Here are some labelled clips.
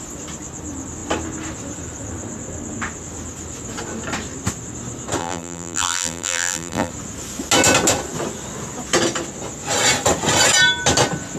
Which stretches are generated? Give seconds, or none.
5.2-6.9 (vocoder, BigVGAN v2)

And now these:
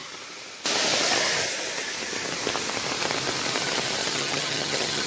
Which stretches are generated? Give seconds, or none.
4.0-5.1 (vocoder, HiFi-GAN)

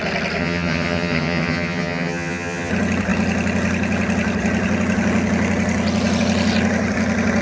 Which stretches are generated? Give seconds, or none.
0.4-2.7 (vocoder, HiFi-GAN)

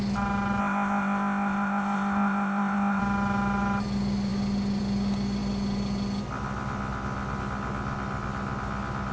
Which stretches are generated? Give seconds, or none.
0.6-3.0 (codec, ZipCodec)

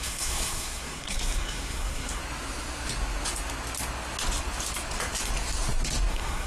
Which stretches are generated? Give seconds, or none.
0.0-2.2 (codec, SNAC); 6.1-6.5